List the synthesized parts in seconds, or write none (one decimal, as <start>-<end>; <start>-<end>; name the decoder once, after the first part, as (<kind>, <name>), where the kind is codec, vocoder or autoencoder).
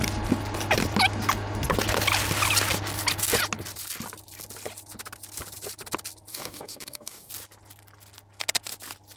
6.3-7.3 (codec, DAC)